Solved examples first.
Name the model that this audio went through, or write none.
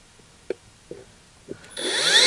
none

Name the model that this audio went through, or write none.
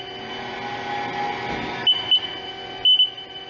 none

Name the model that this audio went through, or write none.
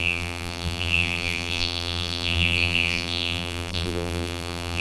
vocoder, BigVGAN v2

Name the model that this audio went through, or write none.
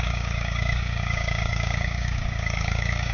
codec, DAC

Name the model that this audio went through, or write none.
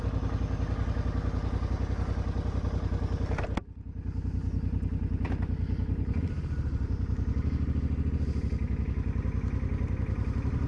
none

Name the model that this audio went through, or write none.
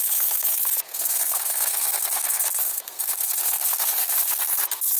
codec, SNAC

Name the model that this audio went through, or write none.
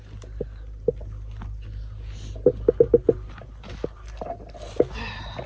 none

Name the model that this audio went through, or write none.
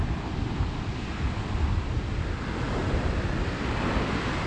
none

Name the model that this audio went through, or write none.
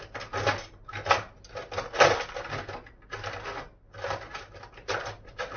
none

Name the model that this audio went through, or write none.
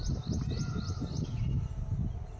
none